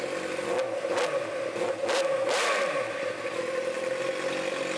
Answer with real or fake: real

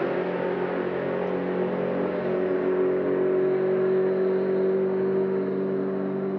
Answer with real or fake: real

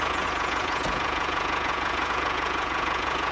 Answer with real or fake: fake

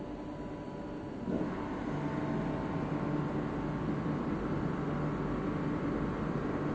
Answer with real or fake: real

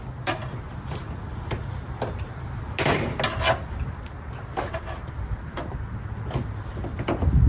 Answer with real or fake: real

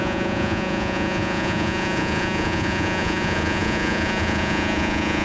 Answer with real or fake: fake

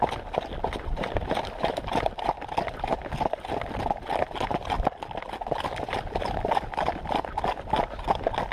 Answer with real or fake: real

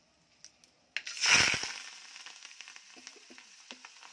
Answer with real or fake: real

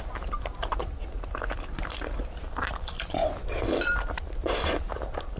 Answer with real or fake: fake